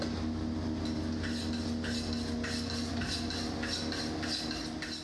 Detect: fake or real real